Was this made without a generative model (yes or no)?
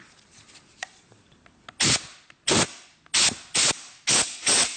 yes